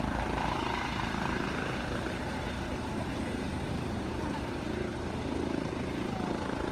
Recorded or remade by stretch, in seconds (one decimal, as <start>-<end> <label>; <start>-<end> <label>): 0.0-2.7 recorded; 2.7-4.4 remade; 4.4-6.7 recorded